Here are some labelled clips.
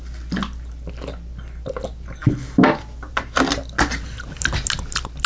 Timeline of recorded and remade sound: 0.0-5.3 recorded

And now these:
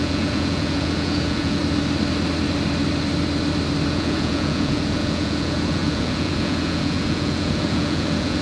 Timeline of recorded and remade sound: 0.0-1.6 remade; 1.6-3.9 recorded; 3.9-8.4 remade

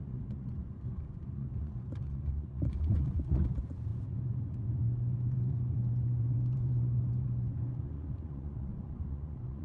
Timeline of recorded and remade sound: 0.0-9.6 remade

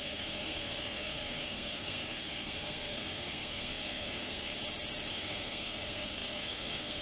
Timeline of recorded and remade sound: 0.0-4.5 remade; 4.5-5.1 recorded; 5.1-7.0 remade

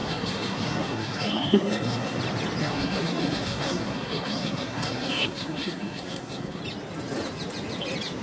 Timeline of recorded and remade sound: 0.0-2.2 remade; 2.2-2.6 recorded; 2.6-6.6 remade; 6.6-8.2 recorded

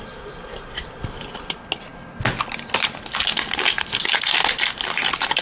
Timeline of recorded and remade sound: 0.0-5.4 recorded

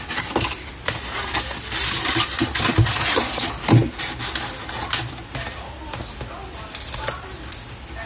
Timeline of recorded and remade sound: 0.0-8.1 recorded

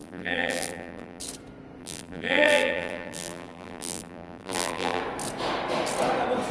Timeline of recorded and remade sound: 0.0-1.2 remade; 1.2-1.8 recorded; 1.8-5.0 remade; 5.0-6.5 recorded